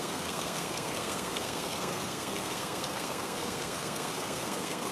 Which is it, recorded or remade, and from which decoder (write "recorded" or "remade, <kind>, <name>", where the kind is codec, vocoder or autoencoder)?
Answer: remade, codec, SNAC